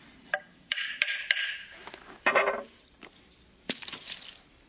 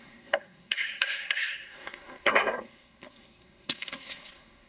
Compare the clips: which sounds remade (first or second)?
second